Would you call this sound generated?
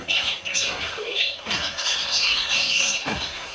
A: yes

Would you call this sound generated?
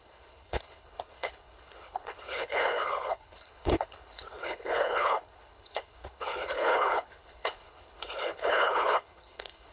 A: yes